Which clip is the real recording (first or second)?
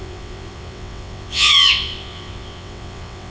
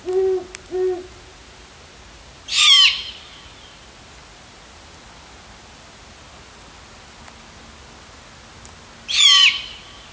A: second